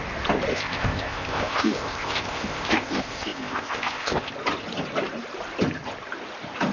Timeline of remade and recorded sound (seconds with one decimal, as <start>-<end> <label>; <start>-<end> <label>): 0.0-0.5 recorded; 0.5-4.3 remade; 4.3-6.7 recorded